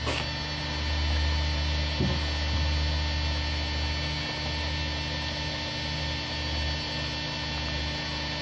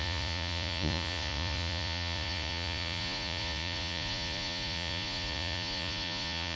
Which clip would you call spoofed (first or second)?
second